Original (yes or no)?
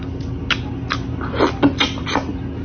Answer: yes